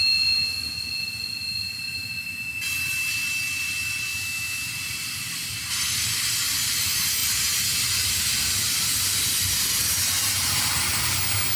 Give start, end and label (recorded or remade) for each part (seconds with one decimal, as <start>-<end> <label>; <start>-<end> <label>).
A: 0.0-4.1 recorded; 4.1-4.7 remade; 4.7-11.6 recorded